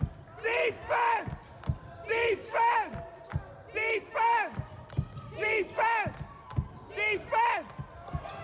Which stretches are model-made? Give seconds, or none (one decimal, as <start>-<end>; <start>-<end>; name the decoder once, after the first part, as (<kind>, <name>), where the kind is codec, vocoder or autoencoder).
none